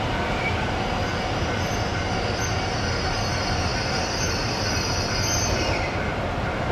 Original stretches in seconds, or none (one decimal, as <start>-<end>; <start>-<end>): 1.9-3.3

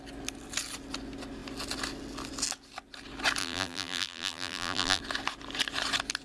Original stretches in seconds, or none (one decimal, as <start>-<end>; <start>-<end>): 0.0-3.4; 5.0-6.2

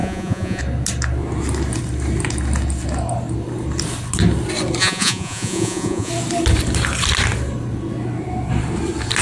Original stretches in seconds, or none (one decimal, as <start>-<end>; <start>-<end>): 0.6-4.8; 6.1-9.2